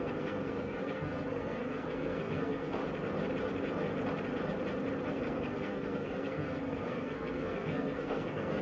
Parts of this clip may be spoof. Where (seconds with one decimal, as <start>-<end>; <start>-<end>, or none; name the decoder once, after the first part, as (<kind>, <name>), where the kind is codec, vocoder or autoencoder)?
0.0-2.8 (codec, SNAC); 5.1-8.6